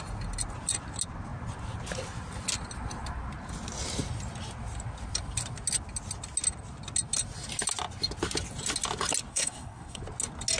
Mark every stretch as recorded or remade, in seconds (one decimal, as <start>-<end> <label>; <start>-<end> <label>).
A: 0.0-9.3 recorded; 9.3-10.0 remade; 10.0-10.6 recorded